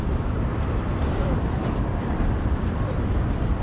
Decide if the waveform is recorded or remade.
remade